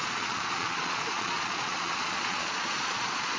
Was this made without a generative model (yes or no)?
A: no